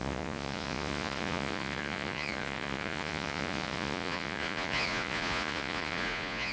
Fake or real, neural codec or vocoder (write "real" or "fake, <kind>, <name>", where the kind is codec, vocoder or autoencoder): fake, vocoder, Vocos